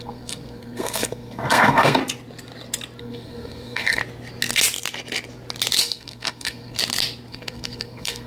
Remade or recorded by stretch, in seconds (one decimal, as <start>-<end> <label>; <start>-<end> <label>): 0.0-2.0 remade; 2.0-3.0 recorded; 3.0-4.0 remade; 4.0-5.8 recorded; 5.8-6.8 remade; 6.8-7.3 recorded; 7.3-8.3 remade

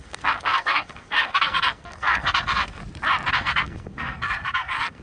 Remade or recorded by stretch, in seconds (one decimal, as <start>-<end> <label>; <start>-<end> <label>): 0.0-2.8 remade; 2.8-3.3 recorded; 3.3-5.0 remade

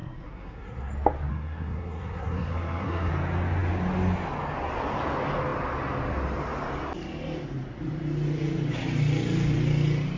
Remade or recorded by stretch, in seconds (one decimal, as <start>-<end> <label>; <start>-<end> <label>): 0.0-0.9 remade; 0.9-1.3 recorded; 1.3-3.1 remade; 3.1-10.2 recorded